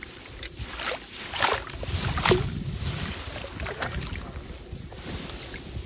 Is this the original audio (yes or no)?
yes